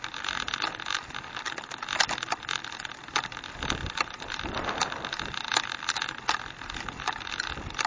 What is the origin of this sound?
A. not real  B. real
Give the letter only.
B